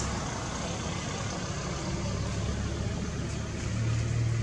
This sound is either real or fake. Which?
real